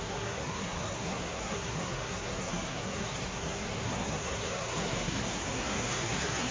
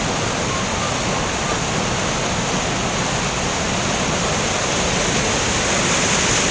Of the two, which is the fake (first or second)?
first